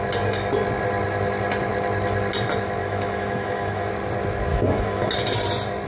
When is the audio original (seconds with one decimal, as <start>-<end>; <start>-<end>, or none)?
0.0-2.8; 3.9-4.5; 5.1-5.9